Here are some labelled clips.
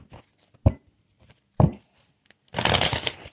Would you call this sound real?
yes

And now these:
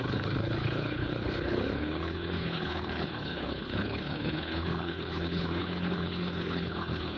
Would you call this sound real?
no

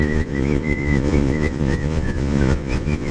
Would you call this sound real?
no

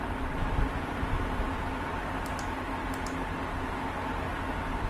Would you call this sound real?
yes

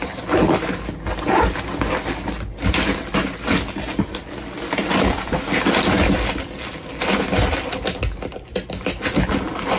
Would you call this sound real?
yes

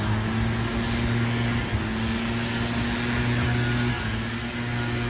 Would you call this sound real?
yes